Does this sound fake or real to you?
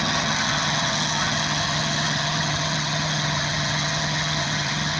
fake